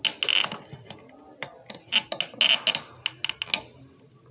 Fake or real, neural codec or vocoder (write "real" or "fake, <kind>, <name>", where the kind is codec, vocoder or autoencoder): real